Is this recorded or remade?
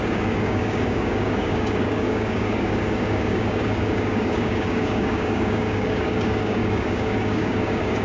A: remade